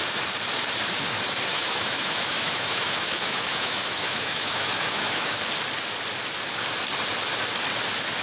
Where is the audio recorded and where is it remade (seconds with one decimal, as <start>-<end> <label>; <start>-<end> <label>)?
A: 0.0-1.5 recorded; 1.5-5.4 remade; 5.4-8.2 recorded